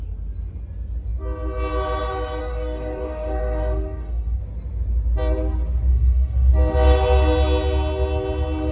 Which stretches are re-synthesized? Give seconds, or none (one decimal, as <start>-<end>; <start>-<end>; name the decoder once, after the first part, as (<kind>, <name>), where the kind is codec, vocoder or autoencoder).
2.4-4.4 (codec, DAC); 5.9-6.5

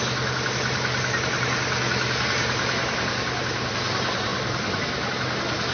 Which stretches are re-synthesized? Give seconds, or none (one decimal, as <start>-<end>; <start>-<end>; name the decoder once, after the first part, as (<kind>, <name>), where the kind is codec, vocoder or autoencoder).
none

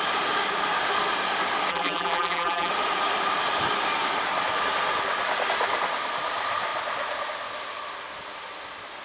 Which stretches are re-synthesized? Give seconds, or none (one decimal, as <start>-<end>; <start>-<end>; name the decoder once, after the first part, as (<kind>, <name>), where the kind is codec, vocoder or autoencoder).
1.7-2.7 (vocoder, BigVGAN v2)